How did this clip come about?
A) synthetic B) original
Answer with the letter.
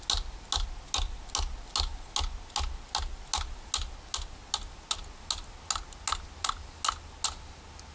B